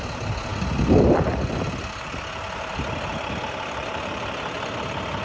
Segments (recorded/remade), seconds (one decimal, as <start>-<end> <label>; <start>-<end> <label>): 0.0-5.2 recorded

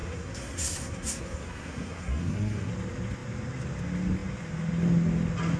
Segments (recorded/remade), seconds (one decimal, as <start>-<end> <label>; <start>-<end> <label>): 0.0-2.7 remade; 2.7-5.6 recorded

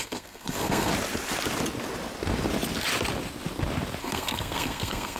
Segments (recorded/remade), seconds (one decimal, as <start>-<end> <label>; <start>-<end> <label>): 0.0-0.9 remade; 0.9-4.0 recorded; 4.0-5.2 remade

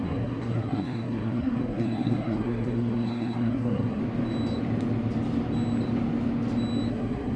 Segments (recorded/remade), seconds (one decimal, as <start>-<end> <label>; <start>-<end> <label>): 0.0-4.0 remade; 4.0-6.9 recorded; 6.9-7.4 remade

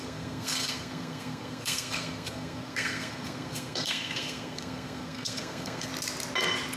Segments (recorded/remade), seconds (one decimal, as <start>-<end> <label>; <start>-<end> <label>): 0.0-5.9 remade; 5.9-6.8 recorded

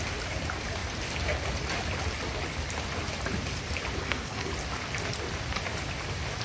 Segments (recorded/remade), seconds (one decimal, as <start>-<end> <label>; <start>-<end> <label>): 0.0-4.0 recorded; 4.0-4.5 remade; 4.5-6.4 recorded